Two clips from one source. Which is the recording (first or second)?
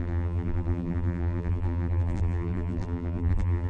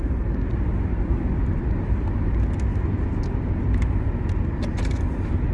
second